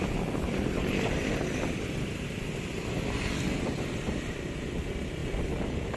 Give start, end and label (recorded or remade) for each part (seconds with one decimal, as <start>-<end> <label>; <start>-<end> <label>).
0.0-6.0 recorded